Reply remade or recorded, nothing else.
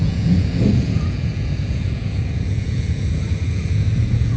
remade